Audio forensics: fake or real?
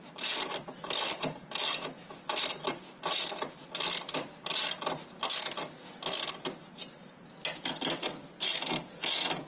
real